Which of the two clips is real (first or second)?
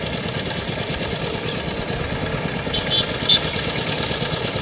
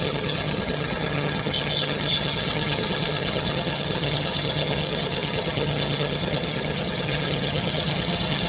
first